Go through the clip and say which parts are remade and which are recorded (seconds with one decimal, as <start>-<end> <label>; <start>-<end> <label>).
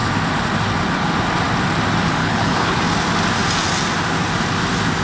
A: 0.0-2.2 recorded; 2.2-2.8 remade; 2.8-5.0 recorded